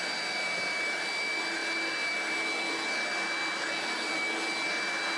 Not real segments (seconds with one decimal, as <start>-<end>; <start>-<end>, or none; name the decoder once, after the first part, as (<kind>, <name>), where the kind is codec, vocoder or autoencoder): none